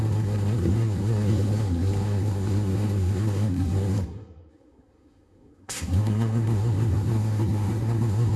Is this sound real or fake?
fake